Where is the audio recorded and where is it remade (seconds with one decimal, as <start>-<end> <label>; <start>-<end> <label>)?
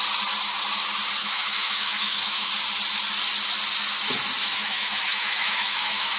0.0-1.2 recorded; 1.2-2.5 remade; 2.5-4.4 recorded; 4.4-6.2 remade